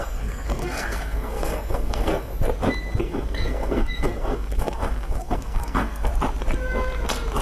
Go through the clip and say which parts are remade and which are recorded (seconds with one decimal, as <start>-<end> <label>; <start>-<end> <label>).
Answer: 0.0-2.3 remade; 2.3-3.0 recorded; 3.0-6.1 remade; 6.1-7.4 recorded

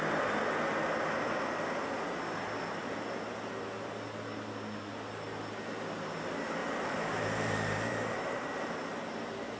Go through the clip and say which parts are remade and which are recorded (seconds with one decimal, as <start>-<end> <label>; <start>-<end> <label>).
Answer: 0.0-2.4 recorded; 2.4-3.0 remade; 3.0-6.6 recorded; 6.6-8.7 remade; 8.7-9.6 recorded

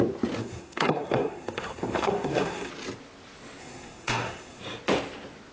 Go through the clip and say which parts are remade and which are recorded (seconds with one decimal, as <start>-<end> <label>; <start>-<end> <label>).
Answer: 0.0-0.4 recorded; 0.4-2.7 remade; 2.7-3.6 recorded; 3.6-4.6 remade; 4.6-5.5 recorded

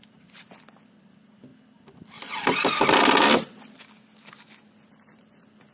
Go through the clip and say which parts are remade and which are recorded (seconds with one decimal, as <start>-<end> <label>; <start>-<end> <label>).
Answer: 0.0-5.7 recorded

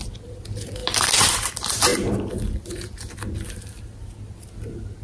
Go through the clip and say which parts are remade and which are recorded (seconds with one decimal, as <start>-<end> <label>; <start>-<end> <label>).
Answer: 0.0-0.8 recorded; 0.8-1.5 remade; 1.5-5.0 recorded

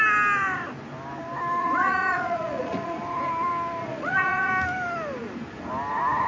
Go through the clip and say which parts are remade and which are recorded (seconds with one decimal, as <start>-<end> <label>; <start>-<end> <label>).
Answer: 0.0-1.6 recorded; 1.6-3.0 remade; 3.0-3.8 recorded; 3.8-4.5 remade; 4.5-6.3 recorded

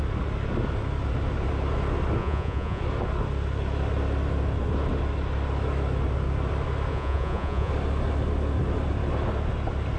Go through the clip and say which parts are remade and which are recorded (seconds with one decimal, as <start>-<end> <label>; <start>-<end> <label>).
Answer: 0.0-2.2 recorded; 2.2-2.8 remade; 2.8-6.9 recorded; 6.9-7.7 remade; 7.7-10.0 recorded